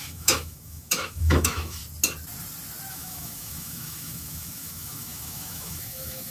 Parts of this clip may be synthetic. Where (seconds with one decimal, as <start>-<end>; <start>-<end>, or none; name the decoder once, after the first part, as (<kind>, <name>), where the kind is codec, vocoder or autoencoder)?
0.0-1.8 (autoencoder, DAC-VAE); 2.9-6.3

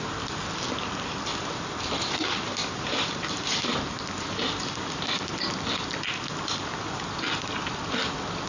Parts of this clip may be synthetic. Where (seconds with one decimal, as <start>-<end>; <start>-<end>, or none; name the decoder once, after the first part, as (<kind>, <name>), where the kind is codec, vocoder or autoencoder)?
2.6-3.7 (vocoder, BigVGAN v2)